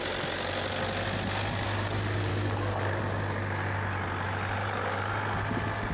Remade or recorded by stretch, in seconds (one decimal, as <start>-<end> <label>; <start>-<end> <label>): 0.0-2.3 recorded; 2.3-3.0 remade; 3.0-4.6 recorded; 4.6-5.1 remade; 5.1-5.9 recorded